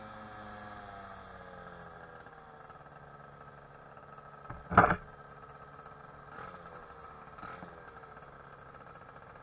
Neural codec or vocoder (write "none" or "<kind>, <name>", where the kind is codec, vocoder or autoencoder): none